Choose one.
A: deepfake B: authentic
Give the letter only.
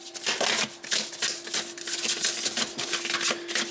B